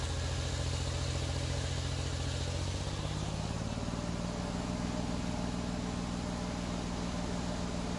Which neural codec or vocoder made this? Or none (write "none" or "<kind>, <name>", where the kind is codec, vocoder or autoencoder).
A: none